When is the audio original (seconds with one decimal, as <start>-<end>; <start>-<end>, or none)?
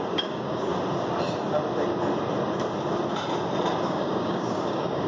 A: 0.7-3.8